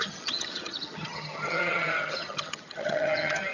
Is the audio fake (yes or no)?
yes